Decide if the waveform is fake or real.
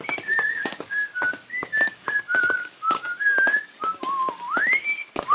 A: fake